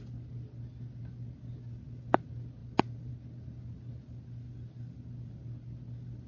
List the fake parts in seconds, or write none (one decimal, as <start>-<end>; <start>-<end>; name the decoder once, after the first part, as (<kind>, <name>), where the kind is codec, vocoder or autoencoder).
2.6-3.1 (vocoder, BigVGAN v2)